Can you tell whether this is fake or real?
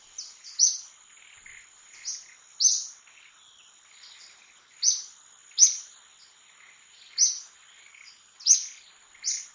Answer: real